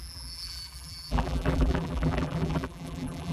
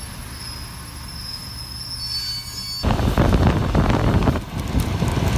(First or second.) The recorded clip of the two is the second